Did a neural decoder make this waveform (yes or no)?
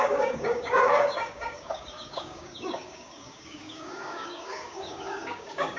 yes